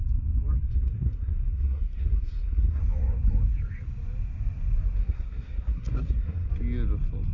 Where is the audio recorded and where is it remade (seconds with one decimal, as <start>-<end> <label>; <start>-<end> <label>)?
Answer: 0.0-0.6 recorded; 0.6-2.8 remade; 2.8-5.0 recorded; 5.0-6.5 remade; 6.5-7.3 recorded